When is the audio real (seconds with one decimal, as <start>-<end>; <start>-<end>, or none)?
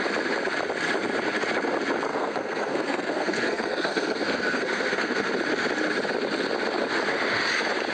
0.0-2.1; 5.3-7.9